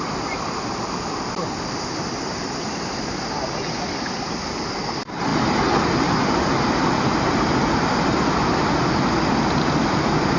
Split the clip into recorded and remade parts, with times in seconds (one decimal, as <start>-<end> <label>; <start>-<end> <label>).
0.0-10.4 recorded